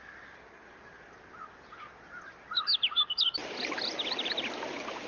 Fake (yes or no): no